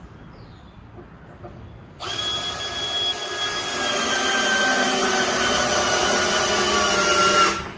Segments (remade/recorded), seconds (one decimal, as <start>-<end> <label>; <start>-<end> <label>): 0.0-7.8 recorded